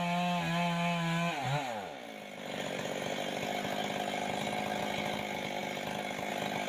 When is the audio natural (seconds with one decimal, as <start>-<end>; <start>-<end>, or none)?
0.0-6.7